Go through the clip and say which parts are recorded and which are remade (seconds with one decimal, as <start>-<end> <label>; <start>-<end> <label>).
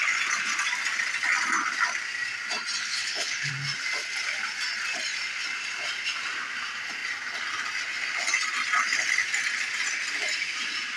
0.0-2.8 recorded; 2.8-3.5 remade; 3.5-11.0 recorded